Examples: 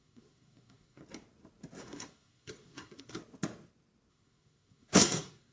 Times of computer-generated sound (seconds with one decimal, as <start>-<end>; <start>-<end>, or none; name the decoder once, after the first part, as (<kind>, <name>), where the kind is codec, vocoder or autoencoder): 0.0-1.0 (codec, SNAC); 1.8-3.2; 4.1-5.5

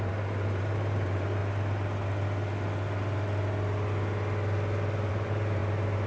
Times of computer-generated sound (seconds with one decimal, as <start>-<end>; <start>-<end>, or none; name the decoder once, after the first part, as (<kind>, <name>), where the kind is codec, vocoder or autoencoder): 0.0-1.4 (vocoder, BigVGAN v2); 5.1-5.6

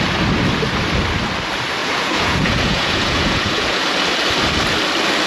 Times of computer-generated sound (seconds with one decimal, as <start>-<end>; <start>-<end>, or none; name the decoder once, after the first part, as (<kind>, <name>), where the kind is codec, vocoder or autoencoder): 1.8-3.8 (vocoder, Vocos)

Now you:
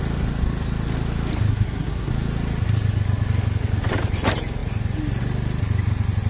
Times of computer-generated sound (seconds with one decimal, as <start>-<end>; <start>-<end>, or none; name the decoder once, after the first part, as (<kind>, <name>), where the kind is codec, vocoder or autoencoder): 1.5-2.1 (codec, SNAC)

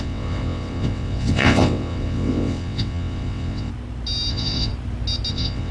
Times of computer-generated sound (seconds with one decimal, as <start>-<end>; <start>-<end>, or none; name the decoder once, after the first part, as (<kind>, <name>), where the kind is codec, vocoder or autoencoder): 0.0-3.7 (vocoder, WaveNeXt); 4.3-4.7; 5.3-5.7

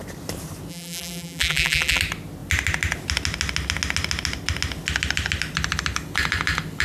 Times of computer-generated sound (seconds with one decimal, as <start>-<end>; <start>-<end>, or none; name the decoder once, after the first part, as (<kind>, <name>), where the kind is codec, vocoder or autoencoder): 0.7-2.0 (vocoder, BigVGAN v2)

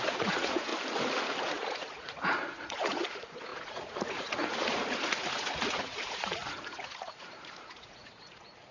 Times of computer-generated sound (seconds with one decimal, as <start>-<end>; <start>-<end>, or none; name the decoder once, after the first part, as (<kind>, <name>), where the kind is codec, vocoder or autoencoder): 0.0-0.7 (vocoder, Vocos); 1.4-8.7